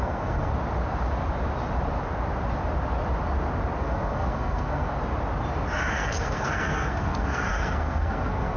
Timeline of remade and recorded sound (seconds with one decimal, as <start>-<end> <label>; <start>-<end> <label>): 0.0-0.5 remade; 0.5-3.8 recorded; 3.8-4.9 remade; 4.9-5.9 recorded; 5.9-8.6 remade